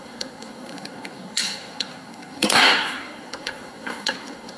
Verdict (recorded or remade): remade